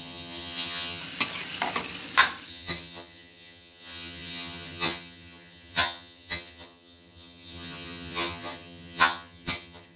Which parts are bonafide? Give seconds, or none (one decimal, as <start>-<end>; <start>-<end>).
1.0-2.5